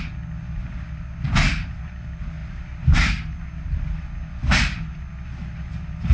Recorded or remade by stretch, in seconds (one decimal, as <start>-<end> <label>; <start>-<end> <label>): 0.0-6.1 recorded